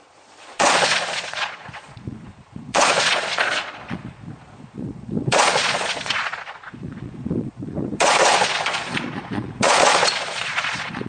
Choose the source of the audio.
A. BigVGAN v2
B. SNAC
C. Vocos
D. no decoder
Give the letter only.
C